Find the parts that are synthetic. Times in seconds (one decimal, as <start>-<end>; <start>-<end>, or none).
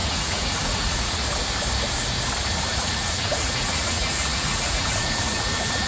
0.0-1.3; 2.7-5.9